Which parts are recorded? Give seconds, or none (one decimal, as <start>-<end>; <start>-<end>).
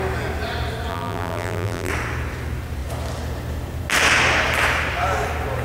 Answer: 0.0-0.9; 1.9-5.6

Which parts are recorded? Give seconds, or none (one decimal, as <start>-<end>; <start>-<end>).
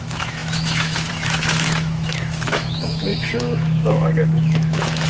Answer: none